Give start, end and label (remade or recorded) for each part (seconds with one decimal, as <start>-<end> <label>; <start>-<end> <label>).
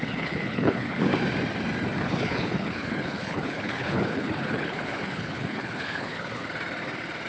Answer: 0.0-1.1 remade; 1.1-2.0 recorded; 2.0-6.4 remade; 6.4-7.3 recorded